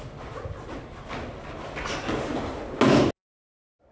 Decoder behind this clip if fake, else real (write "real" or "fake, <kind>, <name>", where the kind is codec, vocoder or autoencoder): real